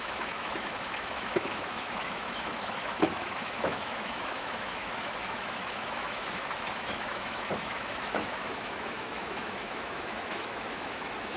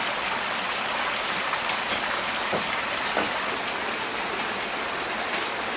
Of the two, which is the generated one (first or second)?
first